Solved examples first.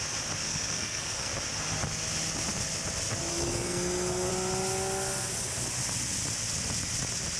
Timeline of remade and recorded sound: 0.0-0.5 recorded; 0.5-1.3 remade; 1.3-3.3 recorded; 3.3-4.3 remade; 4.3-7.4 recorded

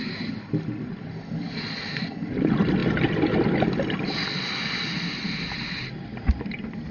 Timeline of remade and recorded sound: 0.0-6.9 recorded

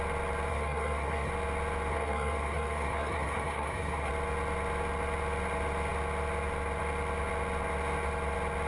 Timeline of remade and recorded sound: 0.0-0.5 recorded; 0.5-1.3 remade; 1.3-1.9 recorded; 1.9-4.1 remade; 4.1-8.7 recorded

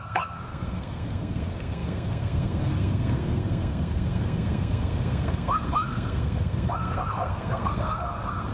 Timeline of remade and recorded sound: 0.0-8.5 remade

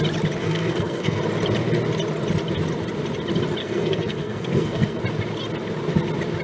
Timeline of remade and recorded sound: 0.0-0.4 recorded; 0.4-1.2 remade; 1.2-3.6 recorded; 3.6-5.0 remade; 5.0-6.4 recorded

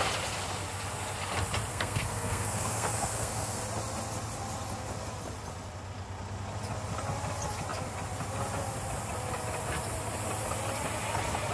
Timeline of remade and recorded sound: 0.0-1.7 recorded; 1.7-3.6 remade; 3.6-11.5 recorded

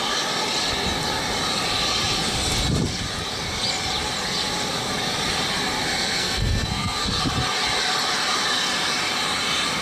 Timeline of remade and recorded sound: 0.0-5.9 recorded; 5.9-7.2 remade; 7.2-9.8 recorded

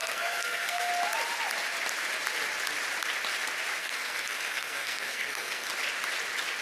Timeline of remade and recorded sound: 0.0-0.9 remade; 0.9-3.8 recorded; 3.8-5.7 remade; 5.7-6.6 recorded